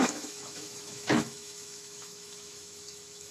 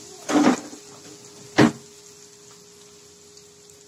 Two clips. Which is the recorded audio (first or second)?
second